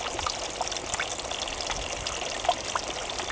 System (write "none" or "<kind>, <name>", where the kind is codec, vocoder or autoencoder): none